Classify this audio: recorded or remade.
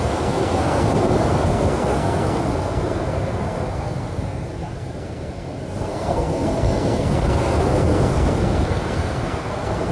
remade